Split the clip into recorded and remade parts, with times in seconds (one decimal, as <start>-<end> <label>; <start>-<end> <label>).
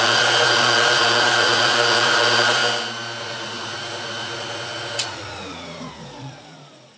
0.0-2.6 remade; 2.6-3.2 recorded; 3.2-7.0 remade